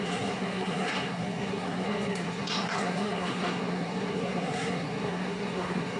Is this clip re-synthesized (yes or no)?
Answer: yes